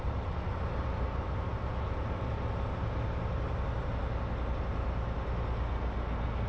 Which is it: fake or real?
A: real